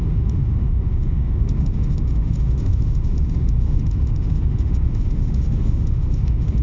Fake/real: fake